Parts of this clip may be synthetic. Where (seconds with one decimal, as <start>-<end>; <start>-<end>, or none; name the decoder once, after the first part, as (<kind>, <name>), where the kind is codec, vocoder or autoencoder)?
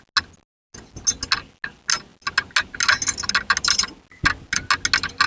none